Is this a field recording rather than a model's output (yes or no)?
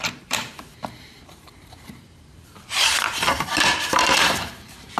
no